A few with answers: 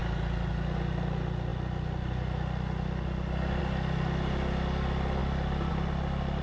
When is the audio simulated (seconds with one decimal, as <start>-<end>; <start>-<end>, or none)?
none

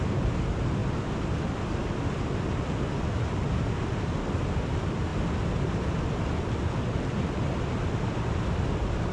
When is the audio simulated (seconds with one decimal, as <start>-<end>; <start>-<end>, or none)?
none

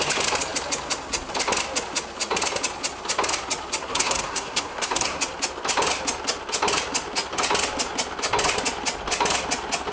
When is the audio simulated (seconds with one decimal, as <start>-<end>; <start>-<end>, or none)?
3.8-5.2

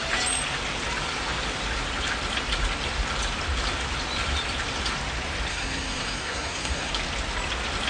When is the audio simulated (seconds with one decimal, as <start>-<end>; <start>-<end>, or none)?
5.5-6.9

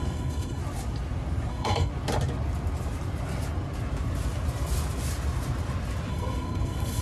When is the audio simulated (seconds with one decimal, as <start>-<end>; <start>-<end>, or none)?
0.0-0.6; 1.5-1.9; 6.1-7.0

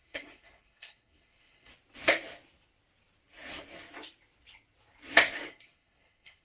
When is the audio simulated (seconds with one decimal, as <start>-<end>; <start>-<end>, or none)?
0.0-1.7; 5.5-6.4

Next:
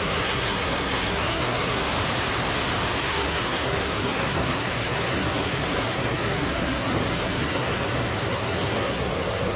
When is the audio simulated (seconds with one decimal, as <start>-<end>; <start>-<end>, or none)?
0.0-1.9; 3.0-9.6